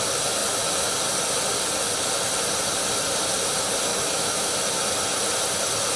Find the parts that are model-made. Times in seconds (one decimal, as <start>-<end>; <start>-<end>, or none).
3.9-4.5